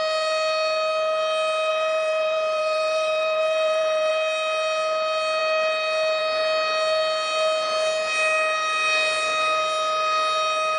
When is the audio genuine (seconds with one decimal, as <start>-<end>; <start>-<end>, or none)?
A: 0.0-1.7; 4.1-10.8